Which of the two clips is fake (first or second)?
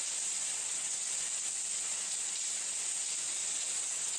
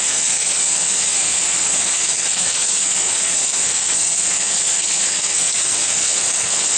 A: second